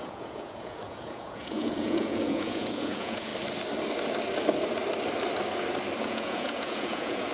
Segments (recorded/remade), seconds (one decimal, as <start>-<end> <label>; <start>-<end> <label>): 0.0-3.3 remade; 3.3-6.0 recorded; 6.0-7.3 remade